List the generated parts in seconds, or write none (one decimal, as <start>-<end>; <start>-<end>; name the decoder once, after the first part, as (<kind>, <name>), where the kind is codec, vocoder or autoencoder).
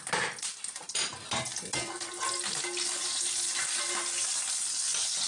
none